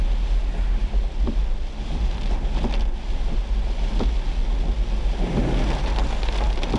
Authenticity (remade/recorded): recorded